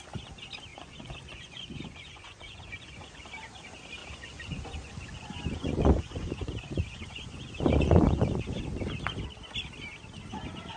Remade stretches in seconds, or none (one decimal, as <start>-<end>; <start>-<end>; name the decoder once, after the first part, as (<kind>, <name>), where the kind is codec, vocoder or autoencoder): 0.7-3.2 (vocoder, Vocos); 4.0-8.6